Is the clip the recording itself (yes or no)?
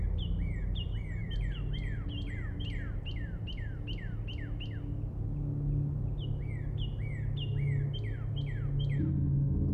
yes